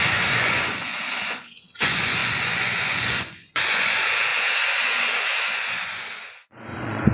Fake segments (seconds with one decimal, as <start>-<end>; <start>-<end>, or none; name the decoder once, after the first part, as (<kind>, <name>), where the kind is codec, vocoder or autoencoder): 0.0-7.1 (vocoder, Vocos)